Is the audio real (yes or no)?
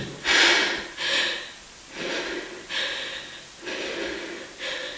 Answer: yes